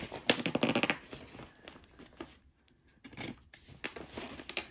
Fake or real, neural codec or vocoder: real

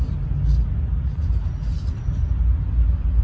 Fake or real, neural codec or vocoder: real